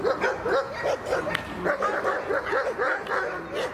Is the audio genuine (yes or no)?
yes